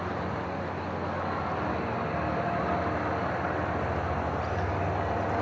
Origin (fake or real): real